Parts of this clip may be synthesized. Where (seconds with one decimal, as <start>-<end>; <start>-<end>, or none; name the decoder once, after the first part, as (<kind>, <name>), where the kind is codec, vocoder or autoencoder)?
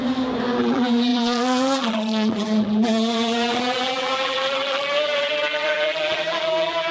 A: 0.6-6.9 (vocoder, BigVGAN v2)